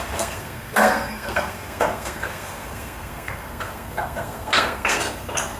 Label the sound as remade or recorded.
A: remade